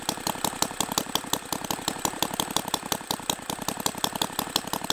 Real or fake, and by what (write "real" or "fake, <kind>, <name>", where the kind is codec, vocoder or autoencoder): real